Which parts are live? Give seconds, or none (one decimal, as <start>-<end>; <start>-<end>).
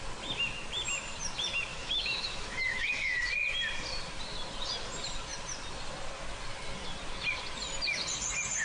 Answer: 0.0-1.7; 3.2-8.6